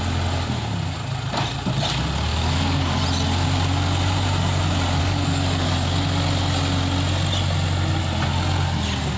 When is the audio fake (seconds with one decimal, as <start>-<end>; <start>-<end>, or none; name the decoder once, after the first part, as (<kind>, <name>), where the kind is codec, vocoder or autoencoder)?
2.3-3.0 (codec, DAC); 5.0-5.7